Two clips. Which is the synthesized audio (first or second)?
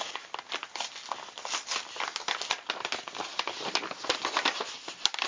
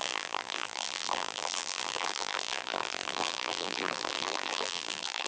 second